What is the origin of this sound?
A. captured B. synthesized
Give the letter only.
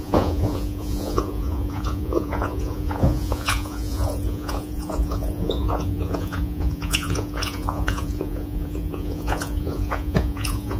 B